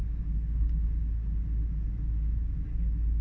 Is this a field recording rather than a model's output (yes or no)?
yes